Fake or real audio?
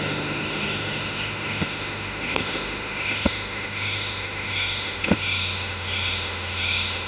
fake